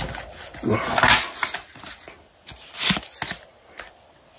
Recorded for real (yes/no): yes